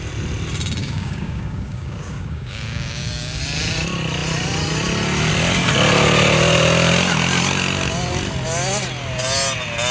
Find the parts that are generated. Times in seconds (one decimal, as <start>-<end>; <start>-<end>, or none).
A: 0.8-3.4